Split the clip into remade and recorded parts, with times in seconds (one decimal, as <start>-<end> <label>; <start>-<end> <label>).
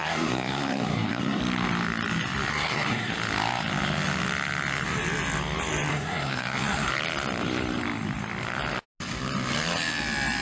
0.0-1.4 remade; 1.4-2.5 recorded; 2.5-3.1 remade; 3.1-5.9 recorded; 5.9-6.9 remade; 6.9-10.4 recorded